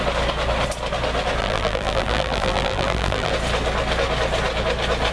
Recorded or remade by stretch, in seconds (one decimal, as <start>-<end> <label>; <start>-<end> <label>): 0.0-1.4 recorded; 1.4-3.3 remade; 3.3-5.1 recorded